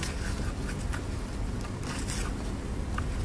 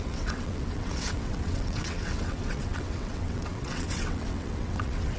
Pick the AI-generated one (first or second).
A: second